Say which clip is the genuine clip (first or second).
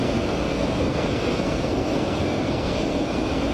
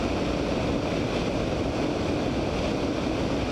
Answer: second